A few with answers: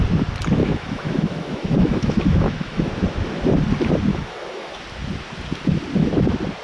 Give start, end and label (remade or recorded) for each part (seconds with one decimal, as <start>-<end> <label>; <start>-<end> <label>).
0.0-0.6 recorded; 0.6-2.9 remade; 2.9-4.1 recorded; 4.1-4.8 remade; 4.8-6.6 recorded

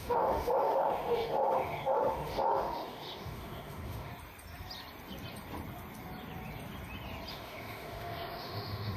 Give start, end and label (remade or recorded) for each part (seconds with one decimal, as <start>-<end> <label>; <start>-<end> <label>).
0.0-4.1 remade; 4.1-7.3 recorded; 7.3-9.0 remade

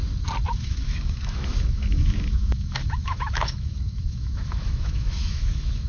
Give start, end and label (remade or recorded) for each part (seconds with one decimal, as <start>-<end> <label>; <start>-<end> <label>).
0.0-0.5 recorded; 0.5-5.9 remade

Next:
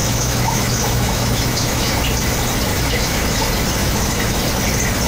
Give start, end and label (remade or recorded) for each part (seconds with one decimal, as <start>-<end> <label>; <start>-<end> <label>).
0.0-1.9 remade; 1.9-2.7 recorded; 2.7-3.4 remade; 3.4-3.8 recorded; 3.8-4.4 remade; 4.4-5.1 recorded

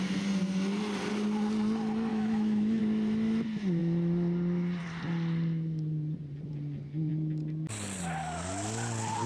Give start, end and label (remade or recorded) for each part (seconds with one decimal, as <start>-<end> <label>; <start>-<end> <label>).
0.0-2.1 recorded; 2.1-2.8 remade; 2.8-9.3 recorded

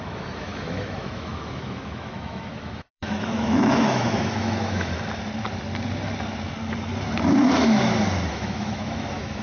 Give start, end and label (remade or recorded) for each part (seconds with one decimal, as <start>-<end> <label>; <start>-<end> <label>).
0.0-4.9 remade; 4.9-8.3 recorded; 8.3-9.4 remade

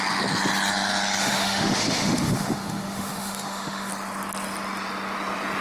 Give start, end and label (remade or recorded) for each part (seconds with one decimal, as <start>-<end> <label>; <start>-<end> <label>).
0.0-1.2 recorded; 1.2-3.9 remade; 3.9-5.6 recorded